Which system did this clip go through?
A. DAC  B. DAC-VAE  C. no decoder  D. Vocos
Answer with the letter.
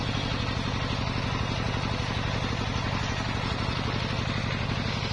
C